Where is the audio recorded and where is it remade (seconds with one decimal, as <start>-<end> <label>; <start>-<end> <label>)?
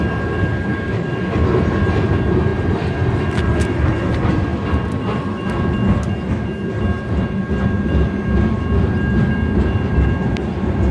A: 0.0-10.9 recorded